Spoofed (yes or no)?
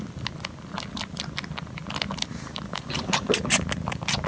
no